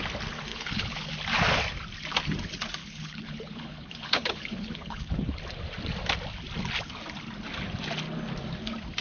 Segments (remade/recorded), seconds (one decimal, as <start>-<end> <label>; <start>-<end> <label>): 0.0-0.5 recorded; 0.5-1.1 remade; 1.1-2.8 recorded; 2.8-5.4 remade; 5.4-9.0 recorded

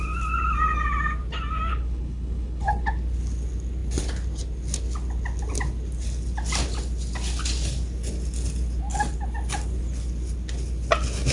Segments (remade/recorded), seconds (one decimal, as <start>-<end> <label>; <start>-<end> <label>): 0.0-1.7 recorded; 1.7-2.9 remade; 2.9-11.3 recorded

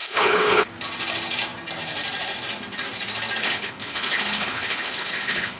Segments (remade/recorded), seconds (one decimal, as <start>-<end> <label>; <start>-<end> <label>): 0.0-0.7 remade; 0.7-3.4 recorded; 3.4-5.6 remade

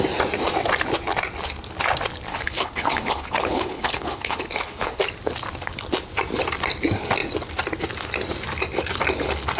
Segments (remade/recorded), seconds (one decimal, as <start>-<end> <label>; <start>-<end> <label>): 0.0-2.3 recorded; 2.3-5.0 remade; 5.0-9.6 recorded